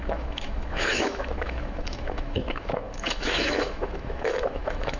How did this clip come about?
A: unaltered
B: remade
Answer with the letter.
B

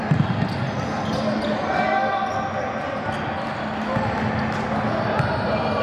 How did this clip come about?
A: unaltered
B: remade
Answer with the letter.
A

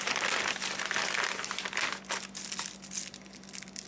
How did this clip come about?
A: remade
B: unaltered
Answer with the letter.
B